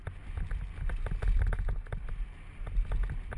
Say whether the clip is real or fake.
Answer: real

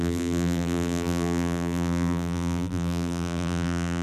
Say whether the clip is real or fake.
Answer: fake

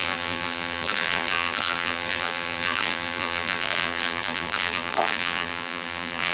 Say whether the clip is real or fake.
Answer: fake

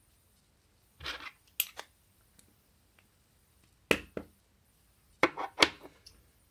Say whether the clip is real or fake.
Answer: real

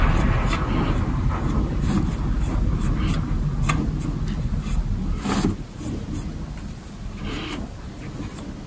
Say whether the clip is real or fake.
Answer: real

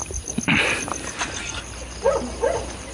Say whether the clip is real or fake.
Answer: fake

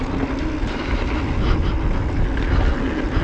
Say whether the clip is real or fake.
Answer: real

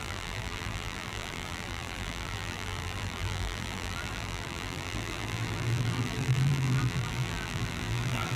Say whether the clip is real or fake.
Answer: fake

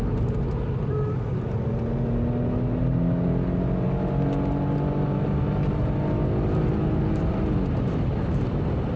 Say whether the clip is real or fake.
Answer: real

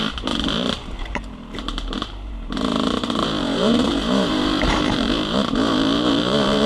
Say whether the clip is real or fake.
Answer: fake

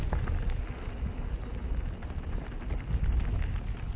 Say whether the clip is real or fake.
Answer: real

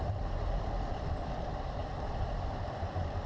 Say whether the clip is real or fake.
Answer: fake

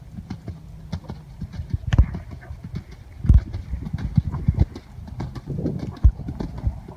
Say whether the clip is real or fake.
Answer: real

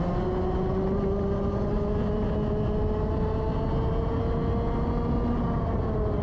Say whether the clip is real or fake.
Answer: real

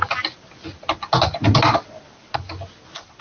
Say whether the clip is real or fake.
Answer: real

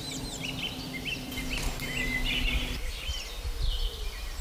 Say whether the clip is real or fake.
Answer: real